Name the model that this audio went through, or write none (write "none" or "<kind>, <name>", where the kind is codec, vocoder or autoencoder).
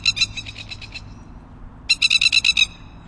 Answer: none